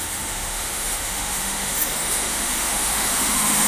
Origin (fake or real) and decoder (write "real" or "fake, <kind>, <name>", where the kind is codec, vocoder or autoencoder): fake, autoencoder, DAC-VAE